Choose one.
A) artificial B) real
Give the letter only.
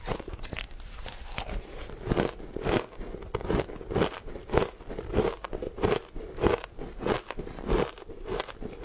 B